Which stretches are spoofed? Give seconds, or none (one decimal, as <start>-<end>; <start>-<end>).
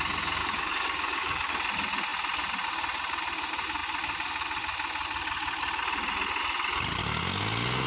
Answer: 0.4-1.5